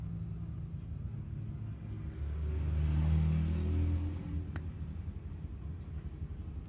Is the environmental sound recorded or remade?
recorded